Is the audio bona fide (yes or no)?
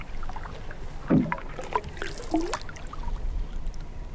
yes